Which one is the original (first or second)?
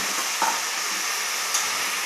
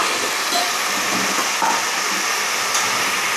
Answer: first